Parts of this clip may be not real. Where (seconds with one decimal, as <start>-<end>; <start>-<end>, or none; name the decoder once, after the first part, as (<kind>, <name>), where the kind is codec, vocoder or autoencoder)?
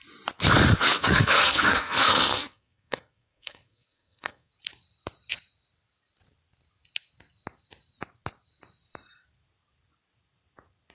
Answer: 1.0-4.5 (codec, SNAC)